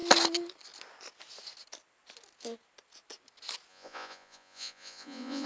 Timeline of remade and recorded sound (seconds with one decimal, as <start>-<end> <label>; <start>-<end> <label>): 0.0-3.7 recorded; 3.7-5.5 remade